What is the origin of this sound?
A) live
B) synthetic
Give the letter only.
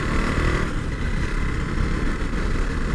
A